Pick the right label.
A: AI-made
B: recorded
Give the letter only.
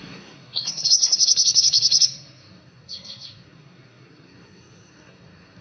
A